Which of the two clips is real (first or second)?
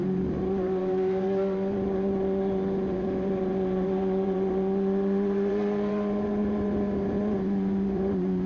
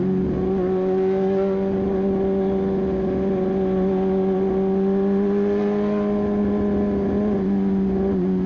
second